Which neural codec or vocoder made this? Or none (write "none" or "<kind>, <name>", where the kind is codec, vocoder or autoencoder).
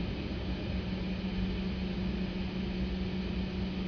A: none